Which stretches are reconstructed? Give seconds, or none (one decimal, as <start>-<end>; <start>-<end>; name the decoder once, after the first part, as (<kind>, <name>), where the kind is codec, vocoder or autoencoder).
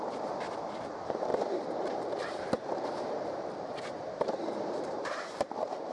0.0-5.9 (vocoder, BigVGAN v2)